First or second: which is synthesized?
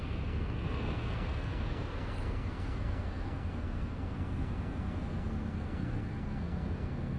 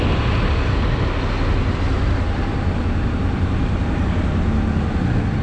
first